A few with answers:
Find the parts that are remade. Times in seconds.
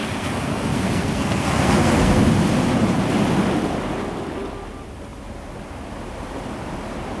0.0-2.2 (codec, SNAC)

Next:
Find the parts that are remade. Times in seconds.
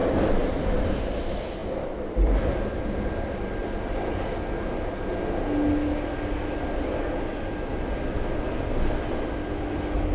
none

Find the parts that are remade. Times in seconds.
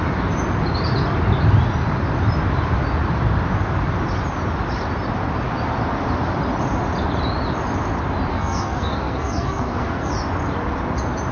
8.3-10.1 (codec, SNAC)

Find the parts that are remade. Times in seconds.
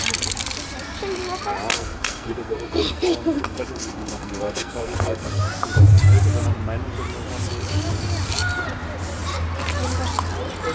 1.7-5.4 (codec, SNAC)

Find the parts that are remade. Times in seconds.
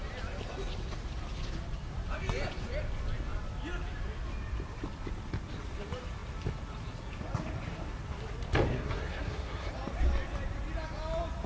8.7-9.7 (codec, SNAC)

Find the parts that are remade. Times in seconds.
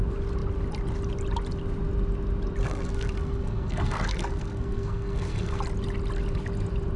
2.6-5.6 (codec, SNAC)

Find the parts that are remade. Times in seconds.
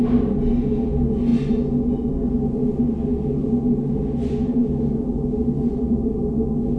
none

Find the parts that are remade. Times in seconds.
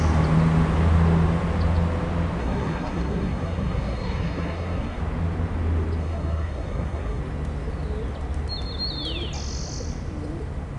2.4-5.0 (codec, SNAC); 6.0-7.2